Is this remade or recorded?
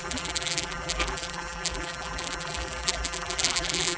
remade